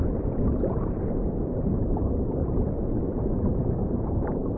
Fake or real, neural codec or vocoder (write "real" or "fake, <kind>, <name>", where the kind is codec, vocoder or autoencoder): fake, vocoder, BigVGAN v2